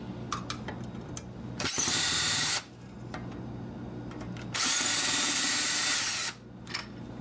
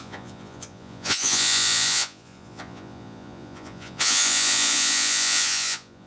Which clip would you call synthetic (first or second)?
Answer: second